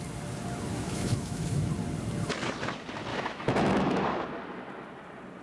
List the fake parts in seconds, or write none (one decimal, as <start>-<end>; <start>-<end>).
0.7-1.7; 3.1-4.0